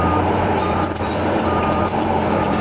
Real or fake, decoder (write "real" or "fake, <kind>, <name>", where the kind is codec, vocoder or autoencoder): fake, vocoder, BigVGAN v2